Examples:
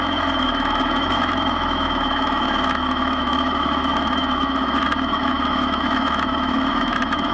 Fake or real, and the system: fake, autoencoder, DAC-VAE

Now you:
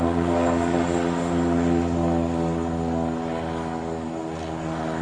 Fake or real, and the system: real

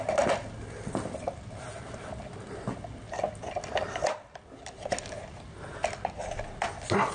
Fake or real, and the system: real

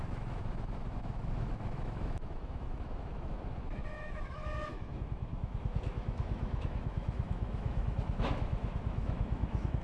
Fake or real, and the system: fake, autoencoder, DAC-VAE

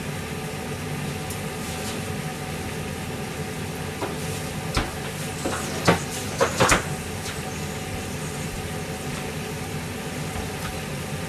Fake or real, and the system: real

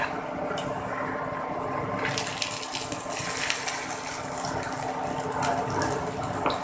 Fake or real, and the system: real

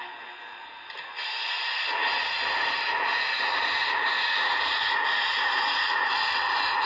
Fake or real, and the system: real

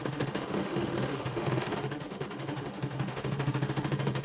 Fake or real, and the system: fake, autoencoder, DAC-VAE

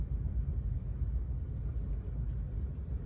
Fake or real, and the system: real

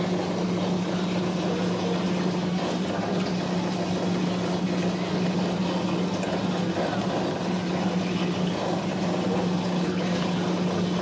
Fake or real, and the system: real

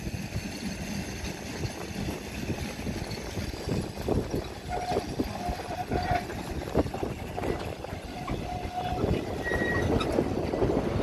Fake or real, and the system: real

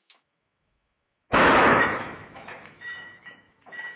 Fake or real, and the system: fake, autoencoder, DAC-VAE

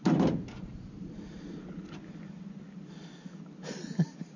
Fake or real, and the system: real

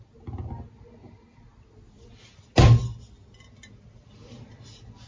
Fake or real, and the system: real